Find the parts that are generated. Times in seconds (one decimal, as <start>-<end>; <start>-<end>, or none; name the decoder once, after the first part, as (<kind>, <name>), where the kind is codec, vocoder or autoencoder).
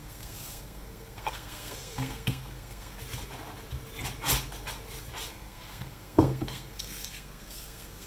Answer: 0.0-3.0 (codec, SNAC); 5.3-8.1